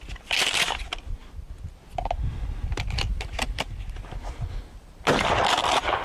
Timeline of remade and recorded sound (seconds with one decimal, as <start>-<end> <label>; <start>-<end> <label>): 0.0-6.0 recorded